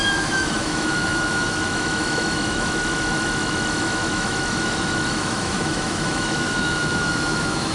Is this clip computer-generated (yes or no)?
yes